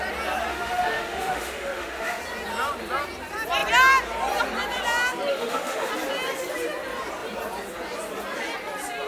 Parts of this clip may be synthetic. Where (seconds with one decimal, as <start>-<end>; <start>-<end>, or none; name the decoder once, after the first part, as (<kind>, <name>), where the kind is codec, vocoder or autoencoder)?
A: 0.5-2.2 (autoencoder, DAC-VAE); 5.3-5.9